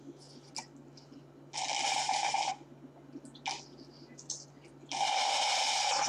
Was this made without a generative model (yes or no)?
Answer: yes